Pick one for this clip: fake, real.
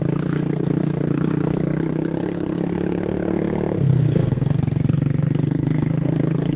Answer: fake